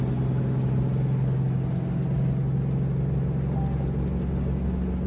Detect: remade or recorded recorded